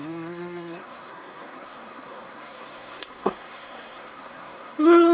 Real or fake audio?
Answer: fake